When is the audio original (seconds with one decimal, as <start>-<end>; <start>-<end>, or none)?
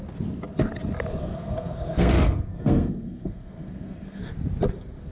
0.0-1.2; 4.2-5.1